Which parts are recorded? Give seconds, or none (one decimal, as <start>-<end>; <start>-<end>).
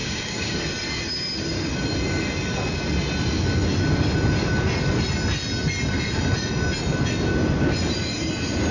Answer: 0.6-8.7